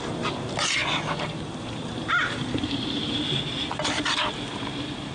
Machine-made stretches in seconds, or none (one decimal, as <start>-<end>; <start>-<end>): none